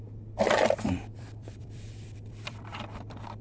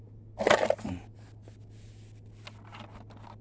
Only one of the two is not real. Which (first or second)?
first